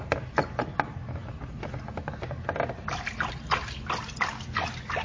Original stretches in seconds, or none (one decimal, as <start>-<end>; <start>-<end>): 0.0-5.0